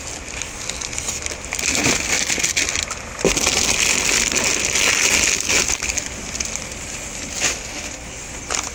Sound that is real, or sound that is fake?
real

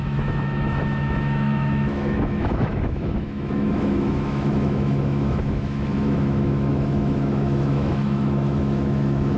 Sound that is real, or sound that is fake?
fake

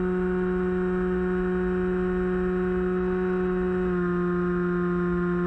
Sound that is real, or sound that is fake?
real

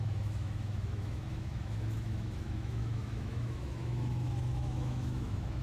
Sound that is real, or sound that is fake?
fake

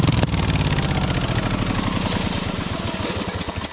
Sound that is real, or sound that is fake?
real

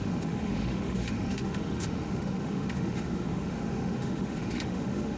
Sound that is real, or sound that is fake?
fake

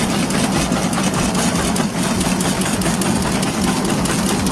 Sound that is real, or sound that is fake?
real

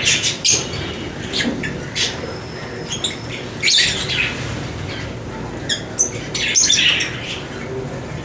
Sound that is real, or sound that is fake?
real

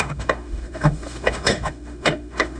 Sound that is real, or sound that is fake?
fake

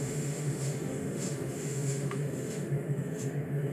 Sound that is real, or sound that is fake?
fake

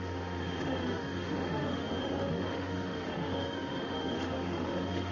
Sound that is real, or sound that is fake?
fake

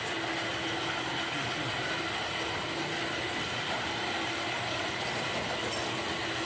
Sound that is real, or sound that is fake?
real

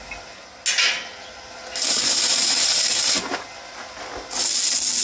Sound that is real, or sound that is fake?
real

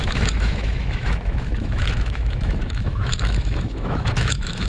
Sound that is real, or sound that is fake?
fake